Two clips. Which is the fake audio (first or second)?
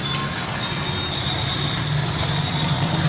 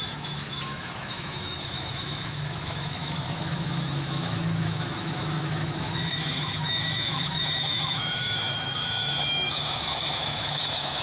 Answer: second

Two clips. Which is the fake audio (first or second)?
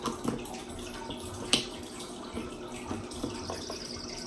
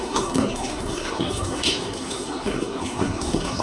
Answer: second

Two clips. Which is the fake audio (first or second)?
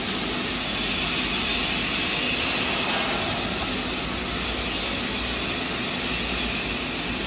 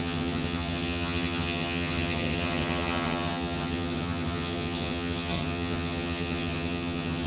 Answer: second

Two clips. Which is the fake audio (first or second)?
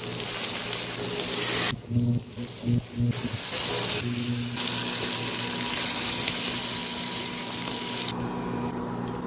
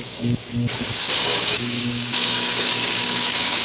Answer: second